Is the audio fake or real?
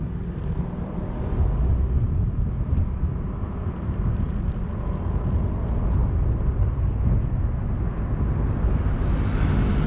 real